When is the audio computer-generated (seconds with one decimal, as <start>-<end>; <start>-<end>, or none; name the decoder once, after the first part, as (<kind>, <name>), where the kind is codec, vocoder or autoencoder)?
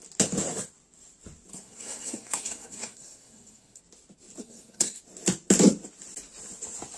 1.5-3.8 (codec, SNAC); 4.4-5.0